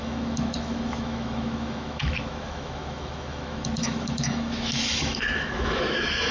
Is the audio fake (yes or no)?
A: yes